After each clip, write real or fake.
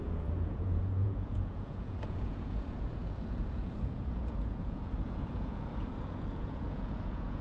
fake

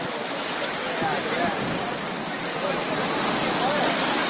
real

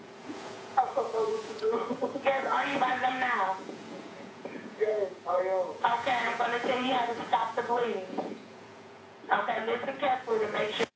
fake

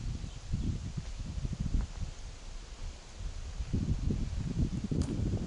real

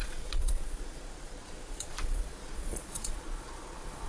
fake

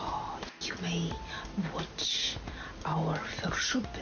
real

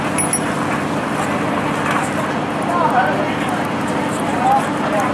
real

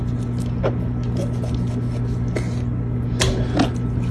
real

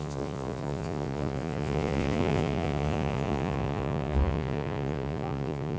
fake